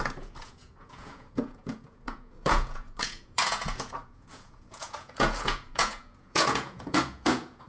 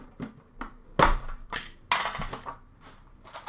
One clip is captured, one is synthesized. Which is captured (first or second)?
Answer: second